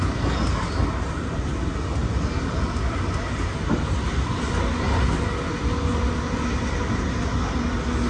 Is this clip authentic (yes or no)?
yes